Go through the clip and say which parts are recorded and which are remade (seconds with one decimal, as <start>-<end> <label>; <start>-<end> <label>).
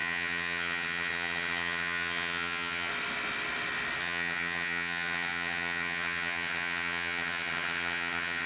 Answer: 0.0-2.9 remade; 2.9-4.0 recorded; 4.0-8.5 remade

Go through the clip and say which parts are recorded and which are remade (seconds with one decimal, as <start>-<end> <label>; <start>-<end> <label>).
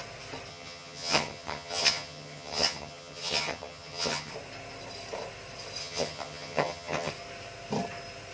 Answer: 0.0-0.5 recorded; 0.5-4.3 remade; 4.3-5.8 recorded; 5.8-7.1 remade; 7.1-8.3 recorded